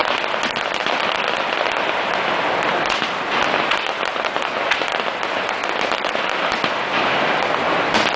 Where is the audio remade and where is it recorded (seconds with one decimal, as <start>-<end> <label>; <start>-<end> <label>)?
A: 0.0-8.2 recorded